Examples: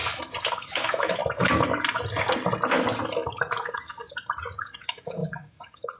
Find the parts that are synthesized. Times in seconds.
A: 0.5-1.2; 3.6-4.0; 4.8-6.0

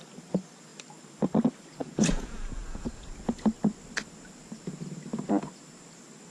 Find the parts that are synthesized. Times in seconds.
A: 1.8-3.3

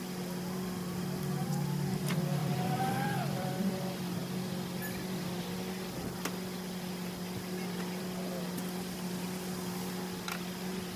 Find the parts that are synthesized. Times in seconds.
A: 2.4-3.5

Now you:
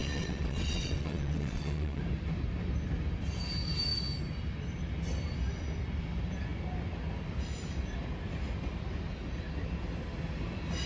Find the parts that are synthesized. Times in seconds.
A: 0.0-2.0

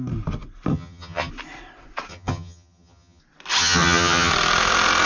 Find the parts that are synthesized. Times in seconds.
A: 0.7-1.3; 2.1-3.2; 3.6-4.3

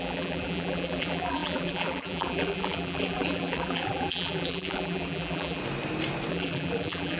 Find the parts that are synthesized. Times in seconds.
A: 0.0-5.6; 6.3-7.2

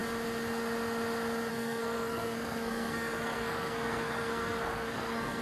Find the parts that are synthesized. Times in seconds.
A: 1.5-5.4